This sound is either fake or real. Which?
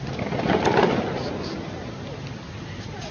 real